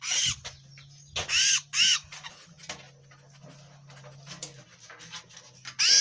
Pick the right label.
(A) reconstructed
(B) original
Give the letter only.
B